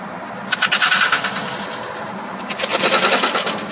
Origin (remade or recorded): recorded